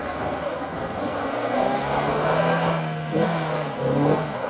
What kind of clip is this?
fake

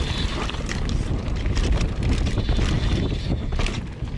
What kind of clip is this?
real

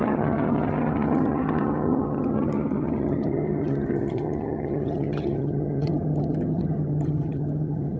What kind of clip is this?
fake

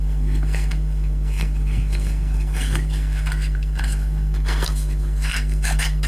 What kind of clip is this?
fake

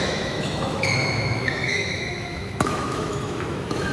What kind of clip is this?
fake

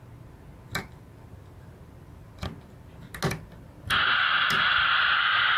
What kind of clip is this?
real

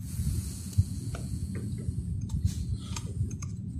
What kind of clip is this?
fake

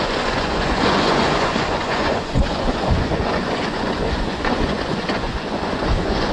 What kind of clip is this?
fake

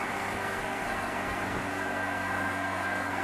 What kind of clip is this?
fake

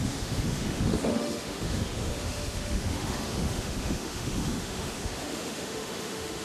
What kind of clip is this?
fake